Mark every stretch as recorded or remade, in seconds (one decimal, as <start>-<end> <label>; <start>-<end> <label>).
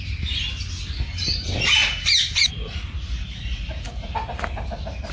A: 0.0-5.1 recorded